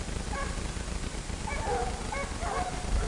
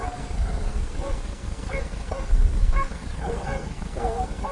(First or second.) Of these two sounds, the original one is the first